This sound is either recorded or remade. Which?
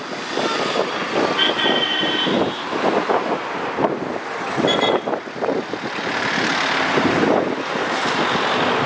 recorded